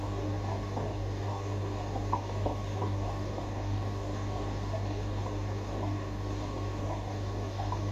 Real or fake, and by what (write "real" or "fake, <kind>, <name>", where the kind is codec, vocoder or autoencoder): fake, codec, DAC